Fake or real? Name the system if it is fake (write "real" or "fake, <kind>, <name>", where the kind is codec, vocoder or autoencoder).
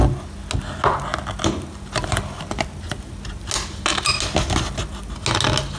real